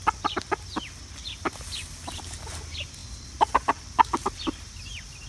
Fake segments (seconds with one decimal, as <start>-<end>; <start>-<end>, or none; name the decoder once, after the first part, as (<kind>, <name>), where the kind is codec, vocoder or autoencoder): none